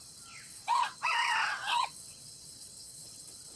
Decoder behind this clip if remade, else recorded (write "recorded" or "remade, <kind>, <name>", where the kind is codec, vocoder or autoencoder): remade, vocoder, WaveNeXt